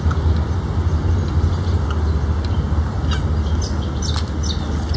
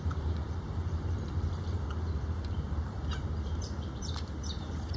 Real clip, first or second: first